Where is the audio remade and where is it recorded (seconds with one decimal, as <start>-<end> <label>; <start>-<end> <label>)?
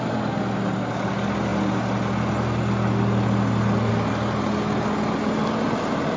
0.0-6.2 recorded